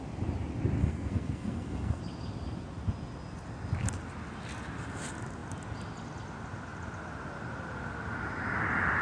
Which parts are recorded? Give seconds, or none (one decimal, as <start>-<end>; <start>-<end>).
0.0-0.8; 2.0-9.0